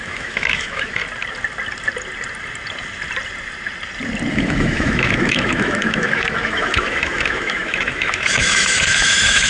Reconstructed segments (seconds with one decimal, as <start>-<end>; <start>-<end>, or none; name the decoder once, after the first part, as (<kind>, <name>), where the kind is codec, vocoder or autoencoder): 0.0-1.0 (autoencoder, DAC-VAE); 4.3-9.5